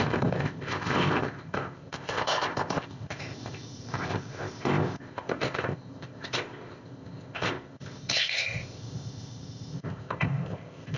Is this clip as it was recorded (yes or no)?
no